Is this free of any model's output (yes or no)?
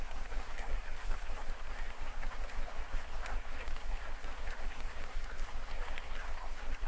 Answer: no